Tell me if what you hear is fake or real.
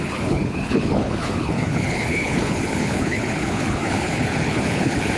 fake